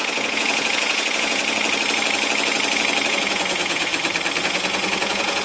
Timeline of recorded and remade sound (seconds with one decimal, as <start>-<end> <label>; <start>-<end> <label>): 0.0-1.4 remade; 1.4-3.1 recorded; 3.1-3.9 remade; 3.9-4.4 recorded; 4.4-5.4 remade

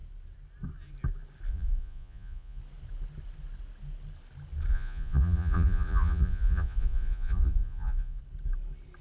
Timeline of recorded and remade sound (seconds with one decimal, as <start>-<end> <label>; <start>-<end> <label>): 0.0-1.5 recorded; 1.5-2.6 remade; 2.6-4.7 recorded; 4.7-8.2 remade; 8.2-9.0 recorded

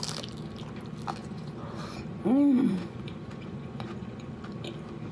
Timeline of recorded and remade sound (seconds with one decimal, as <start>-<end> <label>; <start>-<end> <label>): 0.0-1.2 recorded; 1.2-4.3 remade; 4.3-5.1 recorded

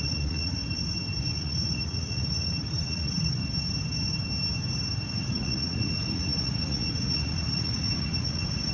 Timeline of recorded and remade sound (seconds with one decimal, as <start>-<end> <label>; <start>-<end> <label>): 0.0-0.6 remade; 0.6-1.2 recorded; 1.2-3.4 remade; 3.4-5.1 recorded; 5.1-8.7 remade